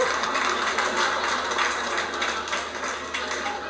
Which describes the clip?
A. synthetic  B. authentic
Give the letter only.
B